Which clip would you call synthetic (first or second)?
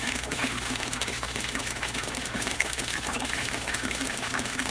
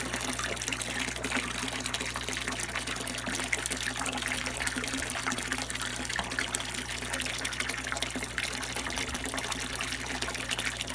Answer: first